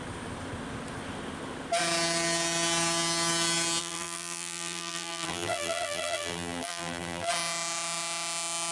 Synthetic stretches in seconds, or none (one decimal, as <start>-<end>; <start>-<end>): 3.8-7.3